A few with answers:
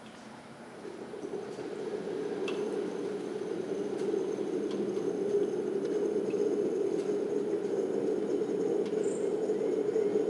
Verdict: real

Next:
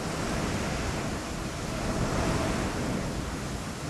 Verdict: real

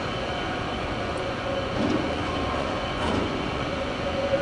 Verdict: fake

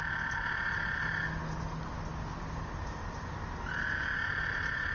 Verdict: real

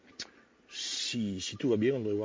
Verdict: real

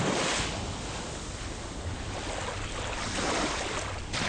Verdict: real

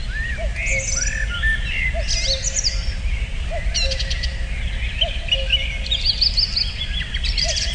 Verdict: real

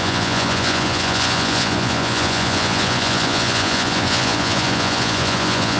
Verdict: fake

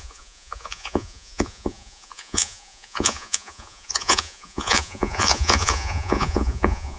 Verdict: fake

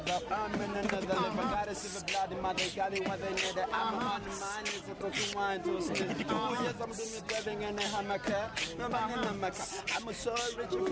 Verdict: real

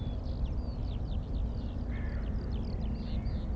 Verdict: real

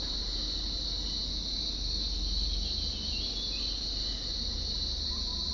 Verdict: real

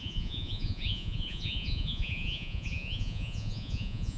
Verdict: fake